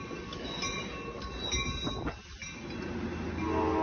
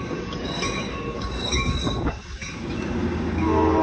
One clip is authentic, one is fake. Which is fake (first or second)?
second